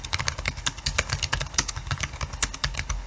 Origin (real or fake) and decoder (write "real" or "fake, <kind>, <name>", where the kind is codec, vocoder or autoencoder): fake, codec, DAC